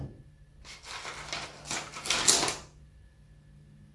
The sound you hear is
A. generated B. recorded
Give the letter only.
B